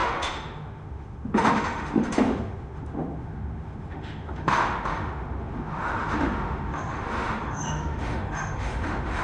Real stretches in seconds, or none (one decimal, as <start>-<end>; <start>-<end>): none